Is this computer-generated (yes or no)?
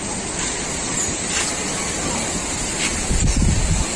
no